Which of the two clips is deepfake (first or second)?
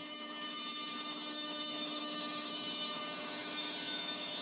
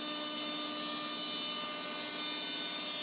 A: first